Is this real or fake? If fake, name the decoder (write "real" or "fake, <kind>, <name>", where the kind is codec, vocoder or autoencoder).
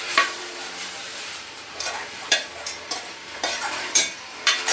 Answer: fake, vocoder, BigVGAN v2